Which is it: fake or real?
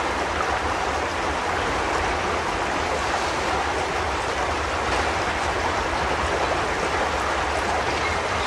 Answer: real